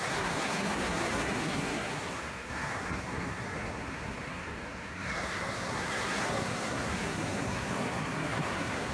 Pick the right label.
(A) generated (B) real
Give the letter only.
A